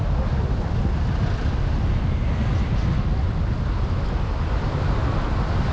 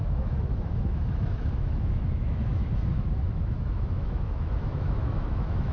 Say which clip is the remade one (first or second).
second